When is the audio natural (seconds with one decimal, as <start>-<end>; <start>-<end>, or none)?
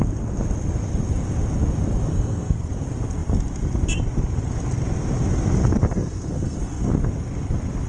0.0-2.1; 2.7-5.8; 6.9-7.9